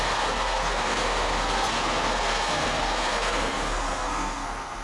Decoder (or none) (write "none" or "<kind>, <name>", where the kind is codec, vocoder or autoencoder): codec, SNAC